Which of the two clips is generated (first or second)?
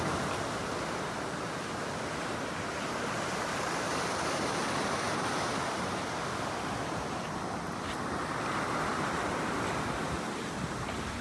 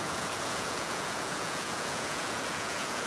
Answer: second